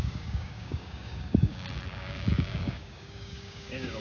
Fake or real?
fake